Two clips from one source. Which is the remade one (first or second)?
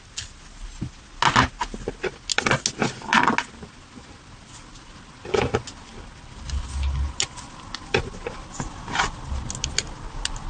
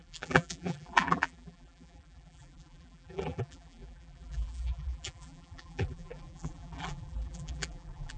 second